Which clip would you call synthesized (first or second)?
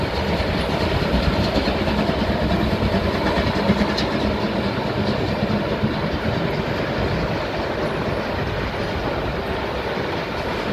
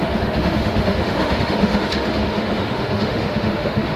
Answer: second